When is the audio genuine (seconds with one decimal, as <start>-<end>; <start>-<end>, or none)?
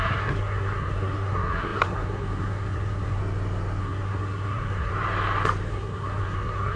3.2-3.8; 4.9-5.7